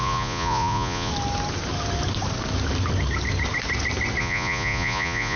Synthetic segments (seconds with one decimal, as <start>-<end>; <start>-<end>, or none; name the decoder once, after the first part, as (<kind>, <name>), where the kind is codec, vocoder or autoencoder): 0.0-1.1 (vocoder, Vocos); 4.2-5.4